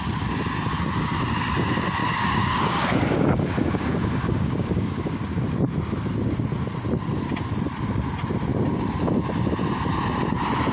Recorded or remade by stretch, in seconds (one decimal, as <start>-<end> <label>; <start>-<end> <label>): 0.0-2.0 recorded; 2.0-5.1 remade; 5.1-10.7 recorded